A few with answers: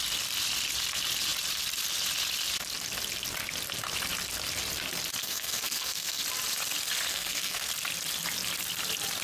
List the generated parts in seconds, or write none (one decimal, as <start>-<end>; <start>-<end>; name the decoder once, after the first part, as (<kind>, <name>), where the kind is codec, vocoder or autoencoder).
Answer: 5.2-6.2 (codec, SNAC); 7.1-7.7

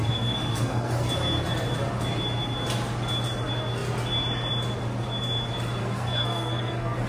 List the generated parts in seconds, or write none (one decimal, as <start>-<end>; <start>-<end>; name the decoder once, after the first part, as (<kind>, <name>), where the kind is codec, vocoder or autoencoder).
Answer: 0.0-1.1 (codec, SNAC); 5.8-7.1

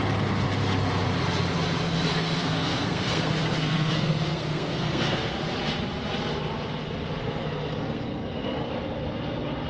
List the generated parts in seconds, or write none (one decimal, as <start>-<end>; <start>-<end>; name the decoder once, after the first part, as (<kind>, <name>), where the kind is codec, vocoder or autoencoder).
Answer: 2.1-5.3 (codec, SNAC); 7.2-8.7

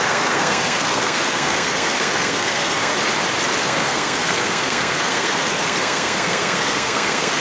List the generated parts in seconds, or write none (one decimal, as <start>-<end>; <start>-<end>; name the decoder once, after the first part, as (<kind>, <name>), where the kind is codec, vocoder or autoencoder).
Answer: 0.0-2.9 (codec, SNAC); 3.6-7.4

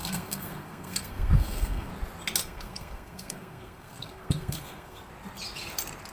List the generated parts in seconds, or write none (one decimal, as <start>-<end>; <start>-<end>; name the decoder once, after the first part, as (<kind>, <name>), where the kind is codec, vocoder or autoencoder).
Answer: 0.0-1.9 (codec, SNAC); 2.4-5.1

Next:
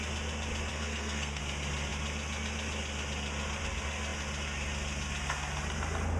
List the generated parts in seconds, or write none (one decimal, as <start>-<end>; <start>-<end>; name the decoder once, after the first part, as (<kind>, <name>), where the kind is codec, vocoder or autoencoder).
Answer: 0.7-1.4 (codec, SNAC)

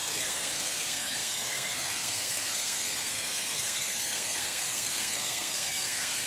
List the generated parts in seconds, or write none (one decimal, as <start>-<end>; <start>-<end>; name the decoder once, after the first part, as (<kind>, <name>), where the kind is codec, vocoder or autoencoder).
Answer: 0.0-6.3 (codec, SNAC)